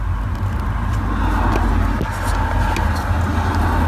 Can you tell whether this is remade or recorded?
recorded